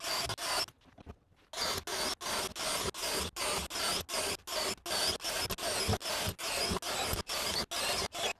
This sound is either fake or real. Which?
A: real